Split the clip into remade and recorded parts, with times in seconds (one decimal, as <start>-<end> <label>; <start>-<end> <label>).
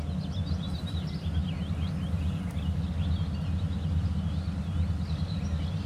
0.0-5.9 recorded